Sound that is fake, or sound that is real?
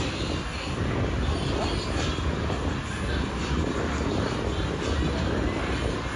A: real